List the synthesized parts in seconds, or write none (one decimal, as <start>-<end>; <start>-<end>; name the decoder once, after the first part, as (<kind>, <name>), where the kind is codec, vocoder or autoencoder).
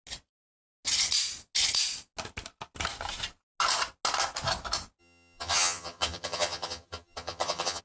5.0-7.8 (vocoder, HiFi-GAN)